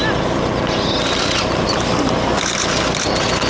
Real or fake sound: real